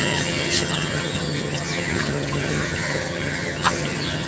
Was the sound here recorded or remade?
remade